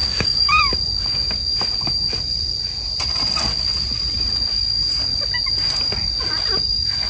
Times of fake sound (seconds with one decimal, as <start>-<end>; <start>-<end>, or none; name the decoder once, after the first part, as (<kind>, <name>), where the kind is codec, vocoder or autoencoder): 0.0-0.6 (codec, DAC)